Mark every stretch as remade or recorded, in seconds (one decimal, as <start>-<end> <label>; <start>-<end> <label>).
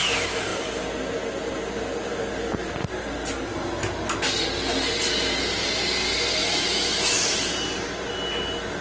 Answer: 0.0-6.4 recorded; 6.4-7.5 remade; 7.5-8.8 recorded